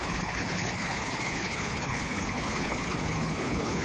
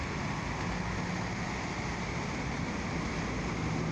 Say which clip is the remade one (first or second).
first